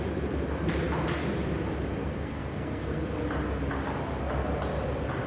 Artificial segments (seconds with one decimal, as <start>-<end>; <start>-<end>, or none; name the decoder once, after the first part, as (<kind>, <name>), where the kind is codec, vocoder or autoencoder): 2.0-3.0 (codec, SNAC)